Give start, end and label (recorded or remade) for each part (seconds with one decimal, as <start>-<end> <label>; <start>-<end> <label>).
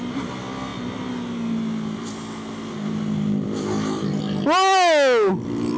0.0-5.8 recorded